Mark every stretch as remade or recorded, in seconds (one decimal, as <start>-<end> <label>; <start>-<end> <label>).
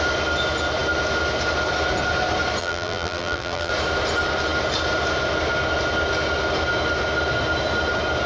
0.0-2.6 recorded; 2.6-3.7 remade; 3.7-8.3 recorded